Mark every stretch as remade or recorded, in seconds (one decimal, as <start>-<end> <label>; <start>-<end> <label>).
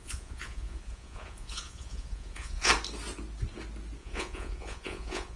0.0-2.7 remade; 2.7-4.0 recorded; 4.0-5.4 remade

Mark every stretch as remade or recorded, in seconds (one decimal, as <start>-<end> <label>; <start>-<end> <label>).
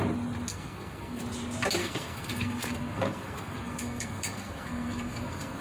0.0-0.5 recorded; 0.5-1.2 remade; 1.2-1.8 recorded; 1.8-5.6 remade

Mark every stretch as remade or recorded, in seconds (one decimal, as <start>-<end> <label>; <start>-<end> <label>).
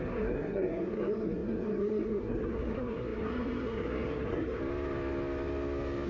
0.0-4.6 remade; 4.6-6.1 recorded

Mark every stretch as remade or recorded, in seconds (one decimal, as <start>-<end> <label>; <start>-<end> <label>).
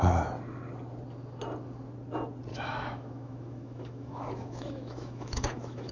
0.0-2.5 recorded; 2.5-5.9 remade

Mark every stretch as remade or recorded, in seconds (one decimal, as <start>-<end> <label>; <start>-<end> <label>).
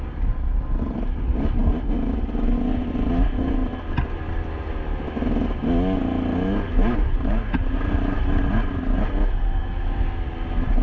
0.0-10.8 recorded